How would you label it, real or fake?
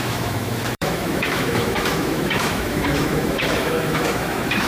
fake